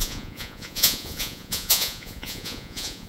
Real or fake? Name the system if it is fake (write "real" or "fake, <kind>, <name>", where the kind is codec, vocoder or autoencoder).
fake, vocoder, Vocos